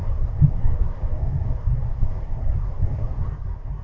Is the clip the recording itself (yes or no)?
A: no